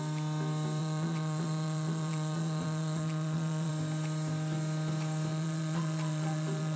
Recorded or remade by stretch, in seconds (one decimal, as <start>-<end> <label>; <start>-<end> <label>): 0.0-0.8 recorded; 0.8-3.7 remade; 3.7-5.3 recorded; 5.3-6.8 remade